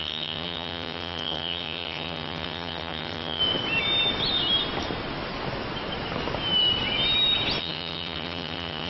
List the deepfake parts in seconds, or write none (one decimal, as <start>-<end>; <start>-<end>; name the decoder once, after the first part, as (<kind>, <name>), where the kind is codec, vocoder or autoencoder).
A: 0.0-3.4 (vocoder, HiFi-GAN); 7.6-8.9